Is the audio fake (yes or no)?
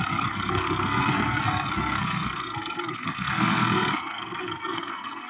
yes